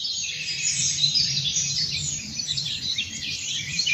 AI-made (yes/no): yes